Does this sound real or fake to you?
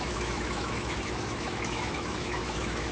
fake